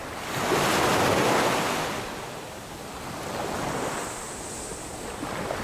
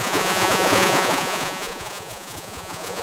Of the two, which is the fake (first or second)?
second